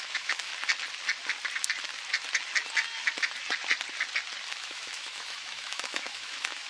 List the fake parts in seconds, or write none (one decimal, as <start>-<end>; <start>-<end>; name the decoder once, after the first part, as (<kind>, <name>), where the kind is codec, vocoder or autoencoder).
0.0-0.5 (autoencoder, DAC-VAE); 4.5-6.7